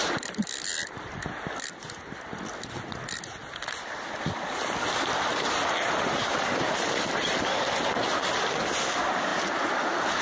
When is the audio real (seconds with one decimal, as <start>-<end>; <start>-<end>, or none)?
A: 0.0-3.4; 7.4-10.2